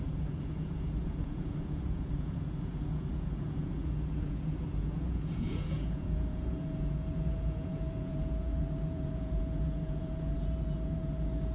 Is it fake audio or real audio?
fake